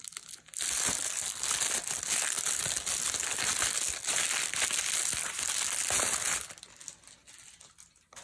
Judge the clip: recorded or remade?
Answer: recorded